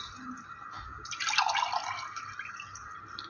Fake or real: real